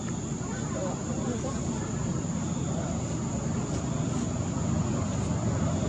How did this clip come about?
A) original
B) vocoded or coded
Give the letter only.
A